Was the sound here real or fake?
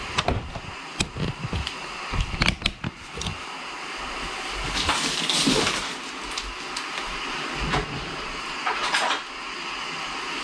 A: real